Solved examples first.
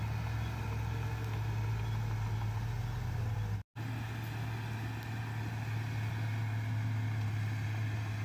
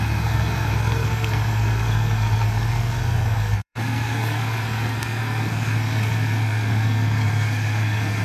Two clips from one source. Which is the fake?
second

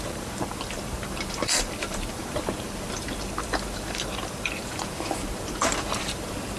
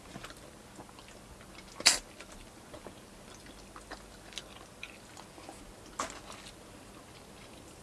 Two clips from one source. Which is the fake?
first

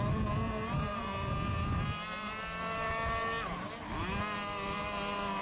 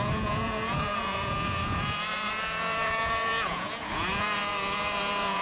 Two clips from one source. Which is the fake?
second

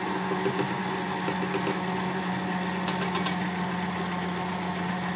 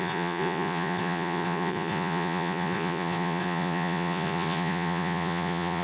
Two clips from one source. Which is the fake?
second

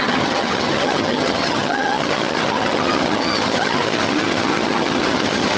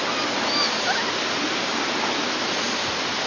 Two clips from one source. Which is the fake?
first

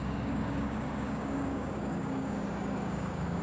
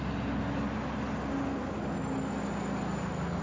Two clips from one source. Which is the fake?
first